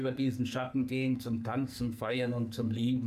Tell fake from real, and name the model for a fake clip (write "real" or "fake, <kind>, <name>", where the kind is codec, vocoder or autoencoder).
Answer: fake, codec, SNAC